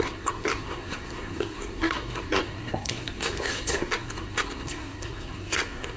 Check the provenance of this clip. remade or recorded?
remade